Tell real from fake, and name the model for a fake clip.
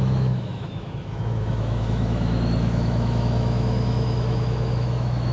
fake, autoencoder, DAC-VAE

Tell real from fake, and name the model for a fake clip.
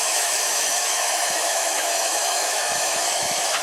fake, autoencoder, DAC-VAE